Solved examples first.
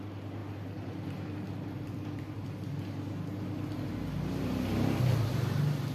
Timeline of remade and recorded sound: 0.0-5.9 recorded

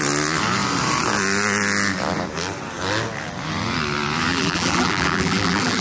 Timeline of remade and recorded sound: 0.0-4.3 recorded; 4.3-5.8 remade

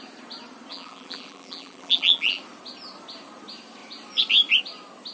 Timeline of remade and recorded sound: 0.0-0.7 recorded; 0.7-2.4 remade; 2.4-5.1 recorded